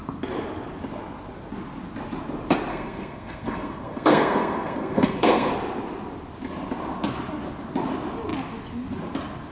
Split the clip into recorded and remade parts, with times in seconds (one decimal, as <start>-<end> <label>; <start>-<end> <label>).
0.0-2.7 recorded; 2.7-5.5 remade; 5.5-9.5 recorded